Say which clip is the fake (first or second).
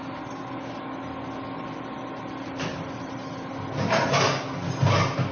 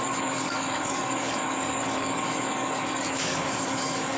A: second